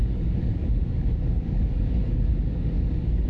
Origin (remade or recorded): remade